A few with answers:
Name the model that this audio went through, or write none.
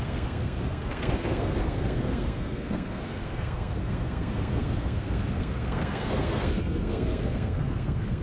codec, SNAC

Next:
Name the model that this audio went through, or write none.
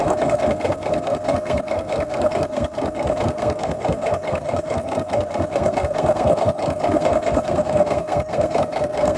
codec, SNAC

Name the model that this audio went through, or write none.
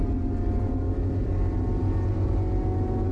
none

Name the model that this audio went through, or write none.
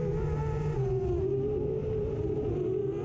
none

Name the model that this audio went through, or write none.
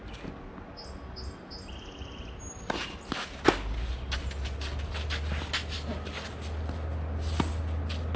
none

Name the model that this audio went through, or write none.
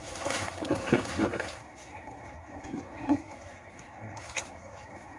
codec, SNAC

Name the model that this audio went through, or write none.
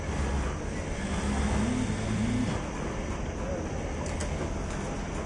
none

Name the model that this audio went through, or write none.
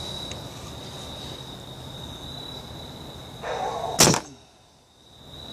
none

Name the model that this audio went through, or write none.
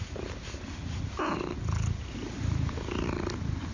none